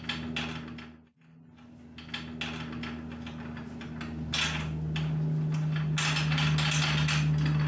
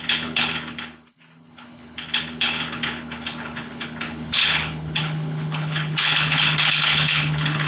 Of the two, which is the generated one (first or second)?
second